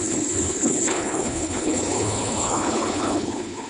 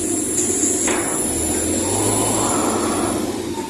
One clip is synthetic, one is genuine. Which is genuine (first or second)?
second